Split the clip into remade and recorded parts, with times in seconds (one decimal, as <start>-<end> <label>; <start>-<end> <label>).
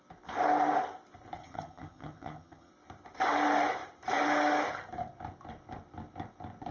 0.0-1.4 recorded; 1.4-2.7 remade; 2.7-6.7 recorded